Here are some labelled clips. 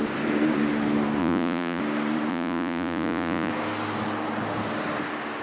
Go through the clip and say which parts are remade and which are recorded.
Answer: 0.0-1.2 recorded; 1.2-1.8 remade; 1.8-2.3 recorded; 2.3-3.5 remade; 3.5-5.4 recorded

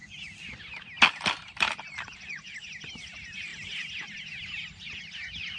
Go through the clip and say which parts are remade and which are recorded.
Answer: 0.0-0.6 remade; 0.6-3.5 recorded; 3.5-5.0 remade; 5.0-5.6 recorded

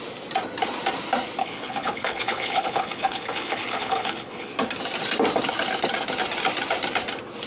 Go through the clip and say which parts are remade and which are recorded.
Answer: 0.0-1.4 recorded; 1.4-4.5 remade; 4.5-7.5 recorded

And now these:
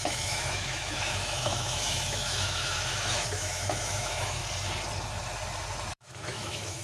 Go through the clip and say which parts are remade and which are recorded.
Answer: 0.0-4.4 remade; 4.4-5.9 recorded; 5.9-6.8 remade